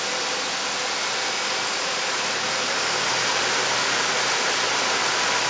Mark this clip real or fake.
real